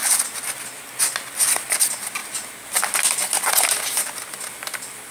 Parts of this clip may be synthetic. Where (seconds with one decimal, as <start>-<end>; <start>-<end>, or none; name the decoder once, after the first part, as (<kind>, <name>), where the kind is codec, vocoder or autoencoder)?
none

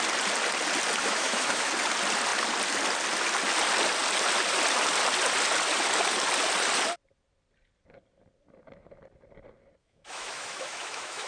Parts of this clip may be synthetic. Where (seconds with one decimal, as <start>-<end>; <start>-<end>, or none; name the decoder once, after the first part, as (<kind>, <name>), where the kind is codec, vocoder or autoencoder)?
1.0-1.7 (autoencoder, DAC-VAE); 9.8-11.3

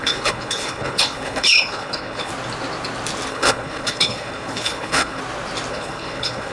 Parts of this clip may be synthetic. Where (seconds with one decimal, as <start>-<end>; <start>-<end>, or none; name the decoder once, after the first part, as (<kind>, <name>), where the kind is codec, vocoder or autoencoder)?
0.0-2.3 (codec, HILCodec); 3.3-5.2; 5.7-6.5

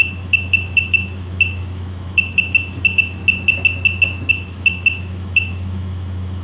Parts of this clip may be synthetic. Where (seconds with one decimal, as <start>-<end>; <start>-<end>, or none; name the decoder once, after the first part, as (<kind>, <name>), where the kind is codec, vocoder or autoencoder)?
0.0-3.2 (autoencoder, DAC-VAE); 4.3-6.4